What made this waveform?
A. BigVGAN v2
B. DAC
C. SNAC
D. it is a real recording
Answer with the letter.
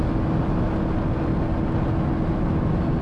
D